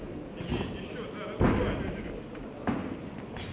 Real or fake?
real